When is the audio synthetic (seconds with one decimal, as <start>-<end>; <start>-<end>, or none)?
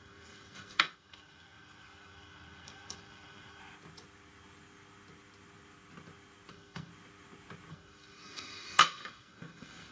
0.0-3.6; 6.5-6.9; 7.7-9.9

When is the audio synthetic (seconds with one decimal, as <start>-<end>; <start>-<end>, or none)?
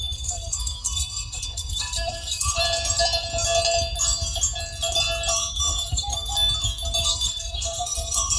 0.0-2.6; 5.3-6.3; 7.0-8.4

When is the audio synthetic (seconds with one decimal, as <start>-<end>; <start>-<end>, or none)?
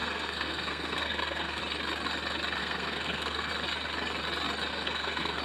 0.0-1.6; 2.6-3.5; 4.7-5.4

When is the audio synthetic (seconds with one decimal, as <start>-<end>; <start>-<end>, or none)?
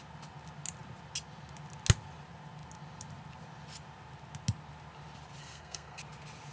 5.4-6.0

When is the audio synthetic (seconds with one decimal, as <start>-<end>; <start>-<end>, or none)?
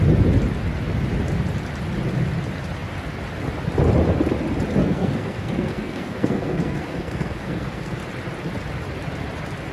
4.8-8.0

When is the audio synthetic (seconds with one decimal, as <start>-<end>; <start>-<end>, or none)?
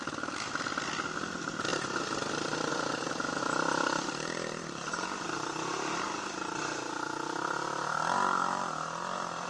none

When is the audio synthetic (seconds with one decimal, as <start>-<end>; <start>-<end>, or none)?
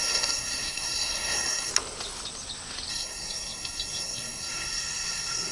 0.0-1.7; 2.9-5.5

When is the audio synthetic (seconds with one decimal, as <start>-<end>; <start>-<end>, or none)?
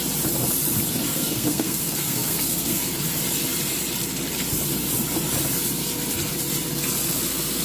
1.1-2.9